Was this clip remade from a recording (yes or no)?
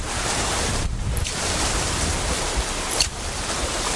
yes